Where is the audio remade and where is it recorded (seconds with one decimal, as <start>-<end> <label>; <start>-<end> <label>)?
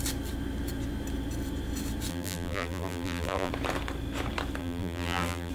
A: 0.0-2.1 recorded; 2.1-3.5 remade; 3.5-4.6 recorded; 4.6-5.5 remade